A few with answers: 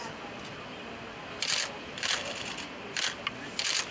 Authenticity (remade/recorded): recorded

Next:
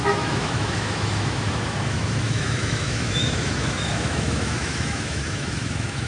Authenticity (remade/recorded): remade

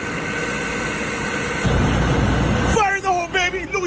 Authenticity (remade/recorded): recorded